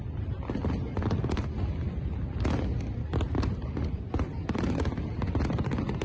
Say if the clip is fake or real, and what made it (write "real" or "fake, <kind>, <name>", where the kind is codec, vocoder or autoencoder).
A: real